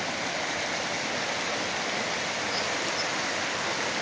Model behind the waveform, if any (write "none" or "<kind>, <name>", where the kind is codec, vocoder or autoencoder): none